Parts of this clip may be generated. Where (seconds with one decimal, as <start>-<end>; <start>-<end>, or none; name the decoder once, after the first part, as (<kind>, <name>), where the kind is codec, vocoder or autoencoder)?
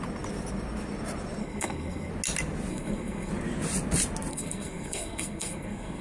1.4-2.1 (codec, SNAC); 2.7-3.3; 4.3-6.0